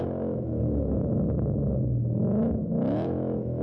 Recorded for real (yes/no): no